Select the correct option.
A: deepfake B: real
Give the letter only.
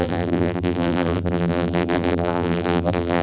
A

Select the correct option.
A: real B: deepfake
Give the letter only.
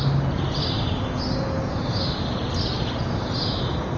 A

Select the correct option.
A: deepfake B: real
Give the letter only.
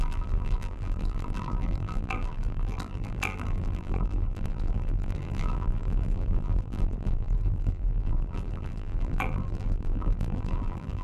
A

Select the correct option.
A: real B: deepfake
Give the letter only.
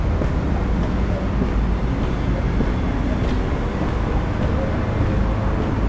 A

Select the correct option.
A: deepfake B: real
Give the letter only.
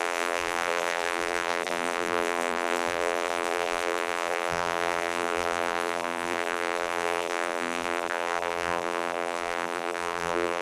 A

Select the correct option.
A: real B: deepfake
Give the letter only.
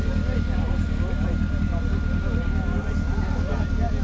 A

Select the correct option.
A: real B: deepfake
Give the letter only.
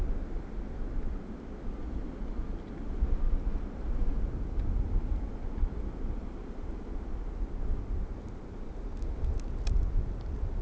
A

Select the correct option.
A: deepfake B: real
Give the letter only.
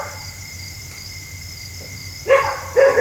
B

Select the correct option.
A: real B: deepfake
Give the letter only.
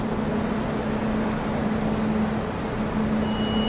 A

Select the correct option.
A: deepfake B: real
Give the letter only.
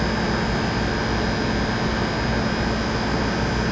B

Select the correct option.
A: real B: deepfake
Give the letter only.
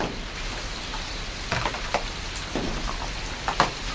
A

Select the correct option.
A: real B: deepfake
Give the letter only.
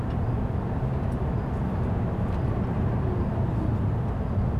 A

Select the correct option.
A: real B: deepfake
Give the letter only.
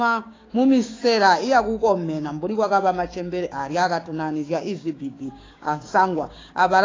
B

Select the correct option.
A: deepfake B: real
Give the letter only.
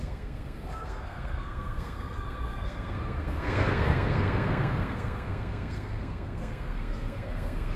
A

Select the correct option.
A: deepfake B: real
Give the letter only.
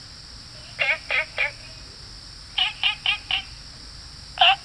B